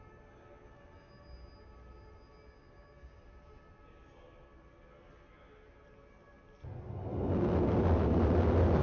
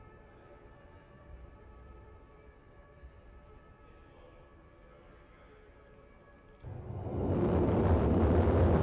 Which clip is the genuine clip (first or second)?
first